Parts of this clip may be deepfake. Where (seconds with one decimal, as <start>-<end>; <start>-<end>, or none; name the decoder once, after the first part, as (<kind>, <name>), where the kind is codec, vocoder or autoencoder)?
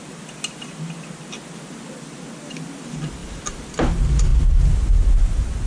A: none